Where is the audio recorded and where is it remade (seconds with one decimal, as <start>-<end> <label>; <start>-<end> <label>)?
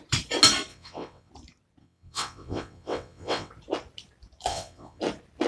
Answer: 0.0-0.7 recorded; 0.7-1.3 remade; 1.3-1.8 recorded; 1.8-3.5 remade; 3.5-4.5 recorded; 4.5-5.0 remade; 5.0-5.5 recorded